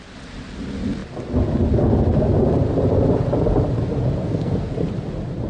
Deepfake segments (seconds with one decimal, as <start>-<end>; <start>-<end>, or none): 4.2-4.7